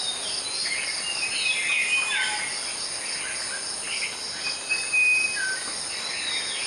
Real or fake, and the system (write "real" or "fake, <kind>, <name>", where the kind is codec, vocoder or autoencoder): real